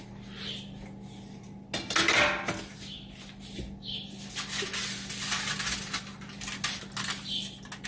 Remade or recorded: recorded